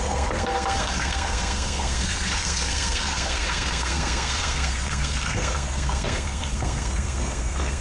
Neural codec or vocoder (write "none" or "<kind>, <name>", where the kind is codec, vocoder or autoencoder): codec, SNAC